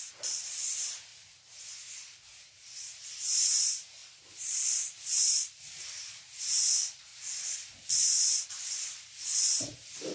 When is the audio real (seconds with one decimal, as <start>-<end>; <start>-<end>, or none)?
7.1-8.5

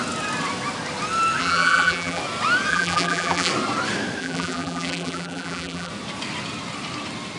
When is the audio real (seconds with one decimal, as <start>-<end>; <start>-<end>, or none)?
0.0-1.4; 2.2-2.7; 3.5-4.2; 5.9-7.4

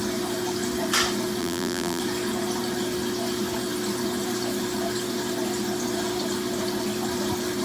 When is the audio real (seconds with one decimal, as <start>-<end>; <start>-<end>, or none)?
0.0-1.4; 2.0-7.6

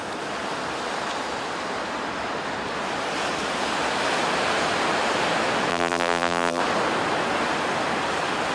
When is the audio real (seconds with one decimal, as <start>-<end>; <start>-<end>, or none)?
0.0-5.7; 6.6-8.5

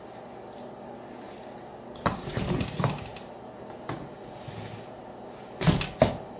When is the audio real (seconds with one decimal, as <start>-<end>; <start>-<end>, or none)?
0.0-6.4

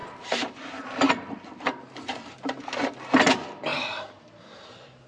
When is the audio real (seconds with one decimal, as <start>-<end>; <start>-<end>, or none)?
1.1-2.3; 2.9-3.7